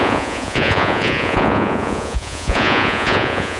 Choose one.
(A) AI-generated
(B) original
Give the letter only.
A